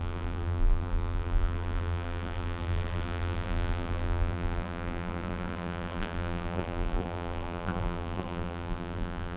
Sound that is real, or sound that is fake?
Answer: fake